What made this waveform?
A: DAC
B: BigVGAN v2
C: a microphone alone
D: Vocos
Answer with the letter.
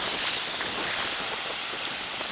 C